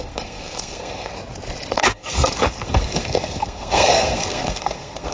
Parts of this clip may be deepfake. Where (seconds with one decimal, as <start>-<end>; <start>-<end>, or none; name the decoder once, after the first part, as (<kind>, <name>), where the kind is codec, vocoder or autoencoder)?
0.0-1.1 (codec, SNAC); 1.7-5.1